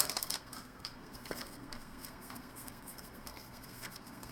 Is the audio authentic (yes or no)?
no